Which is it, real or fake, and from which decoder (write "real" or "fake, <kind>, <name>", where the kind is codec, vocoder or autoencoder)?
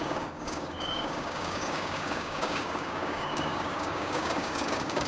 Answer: fake, codec, DAC